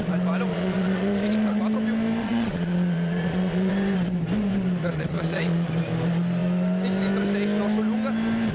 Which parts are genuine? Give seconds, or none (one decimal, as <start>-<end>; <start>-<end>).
0.0-0.5; 1.6-2.2; 3.7-4.8; 5.7-8.5